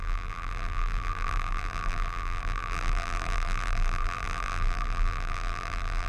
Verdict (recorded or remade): remade